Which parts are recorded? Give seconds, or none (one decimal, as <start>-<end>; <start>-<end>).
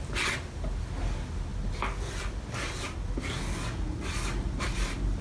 0.0-5.2